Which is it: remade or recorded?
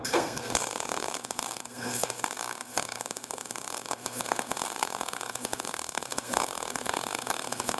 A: remade